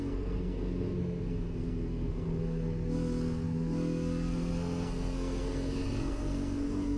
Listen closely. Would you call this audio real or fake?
fake